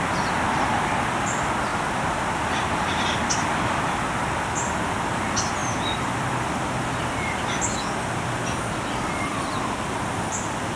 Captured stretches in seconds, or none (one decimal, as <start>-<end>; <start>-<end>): 0.0-10.8